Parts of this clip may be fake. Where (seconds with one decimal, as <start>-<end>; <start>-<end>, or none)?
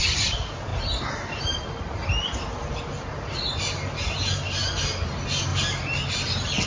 none